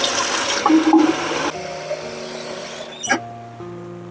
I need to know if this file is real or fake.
real